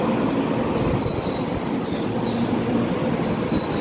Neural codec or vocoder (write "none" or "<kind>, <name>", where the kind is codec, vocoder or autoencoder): none